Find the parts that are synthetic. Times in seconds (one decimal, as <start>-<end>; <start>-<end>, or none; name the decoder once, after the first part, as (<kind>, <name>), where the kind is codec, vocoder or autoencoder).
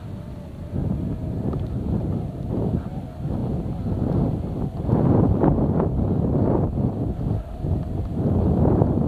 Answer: 0.8-2.5 (vocoder, BigVGAN v2)